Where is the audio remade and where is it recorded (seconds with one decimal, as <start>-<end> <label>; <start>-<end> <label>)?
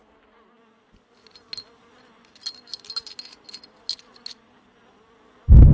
0.0-5.7 recorded